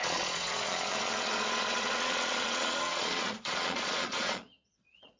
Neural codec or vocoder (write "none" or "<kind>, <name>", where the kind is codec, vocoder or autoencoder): vocoder, Vocos